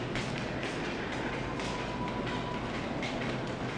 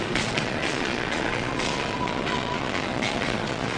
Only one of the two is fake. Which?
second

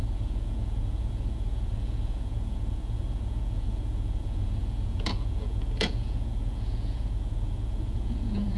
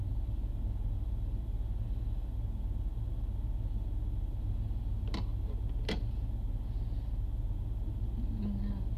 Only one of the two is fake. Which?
first